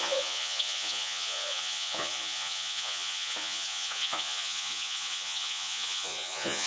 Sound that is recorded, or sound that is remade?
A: remade